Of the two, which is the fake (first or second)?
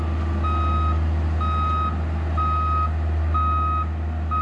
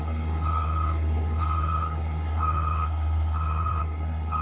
second